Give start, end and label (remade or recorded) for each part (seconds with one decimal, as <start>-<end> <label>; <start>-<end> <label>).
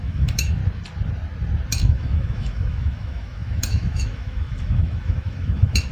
0.0-0.6 remade; 0.6-1.7 recorded; 1.7-5.9 remade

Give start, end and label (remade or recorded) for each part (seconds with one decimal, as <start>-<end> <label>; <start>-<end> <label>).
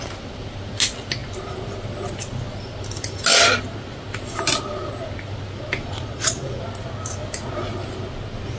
0.0-5.8 recorded; 5.8-6.6 remade; 6.6-8.6 recorded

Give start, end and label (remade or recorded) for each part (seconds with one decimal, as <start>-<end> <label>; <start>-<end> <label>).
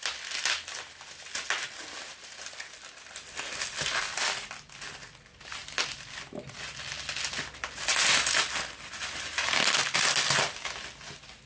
0.0-11.5 recorded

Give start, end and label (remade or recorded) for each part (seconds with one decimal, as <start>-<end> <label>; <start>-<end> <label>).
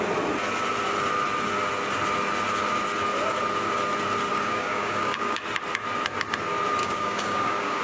0.0-4.3 recorded; 4.3-5.4 remade; 5.4-6.8 recorded; 6.8-7.8 remade